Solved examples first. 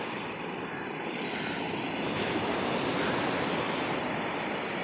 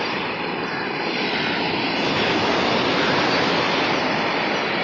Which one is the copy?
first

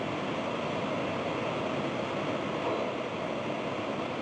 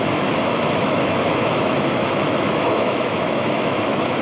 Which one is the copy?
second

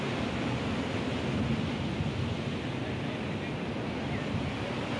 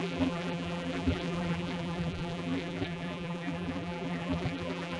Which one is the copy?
second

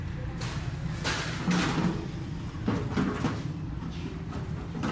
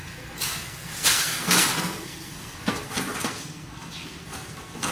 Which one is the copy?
second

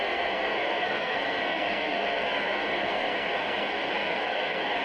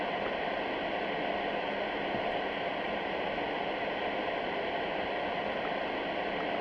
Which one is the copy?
first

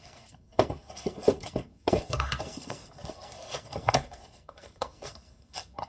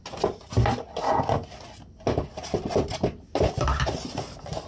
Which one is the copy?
first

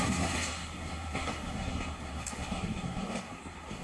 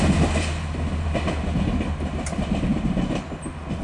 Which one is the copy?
first